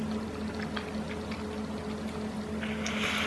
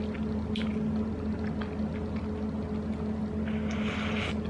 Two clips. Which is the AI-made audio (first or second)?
first